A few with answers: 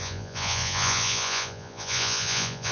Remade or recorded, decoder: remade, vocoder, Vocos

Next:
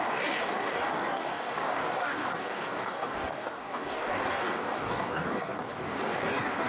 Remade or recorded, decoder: remade, codec, DAC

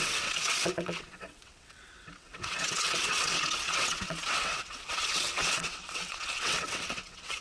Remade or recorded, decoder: remade, vocoder, WaveNeXt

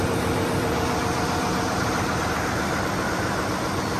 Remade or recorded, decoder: recorded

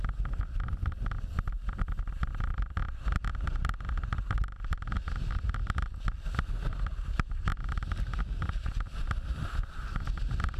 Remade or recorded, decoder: recorded